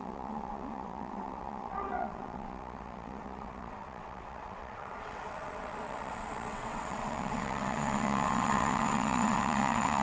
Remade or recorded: remade